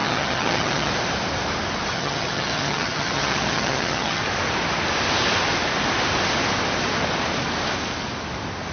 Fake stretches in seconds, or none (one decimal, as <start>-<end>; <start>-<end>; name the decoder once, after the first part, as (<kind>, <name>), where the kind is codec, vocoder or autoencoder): 0.0-0.9 (vocoder, HiFi-GAN); 1.9-4.2